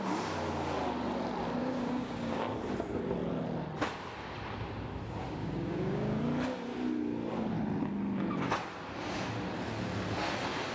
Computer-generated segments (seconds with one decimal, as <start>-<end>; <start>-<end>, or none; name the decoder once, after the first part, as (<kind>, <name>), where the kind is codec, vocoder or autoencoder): 1.6-2.4 (codec, DAC); 5.4-6.2